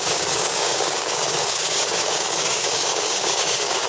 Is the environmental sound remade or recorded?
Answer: remade